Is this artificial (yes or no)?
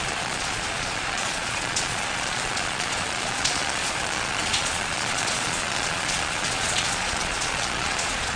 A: yes